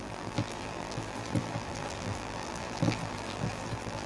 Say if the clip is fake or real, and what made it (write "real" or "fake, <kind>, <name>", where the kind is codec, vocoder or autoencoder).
fake, vocoder, BigVGAN v2